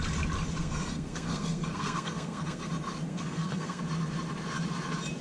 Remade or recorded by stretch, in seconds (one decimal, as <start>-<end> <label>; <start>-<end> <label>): 0.0-0.6 recorded; 0.6-2.7 remade; 2.7-3.1 recorded; 3.1-3.8 remade; 3.8-5.2 recorded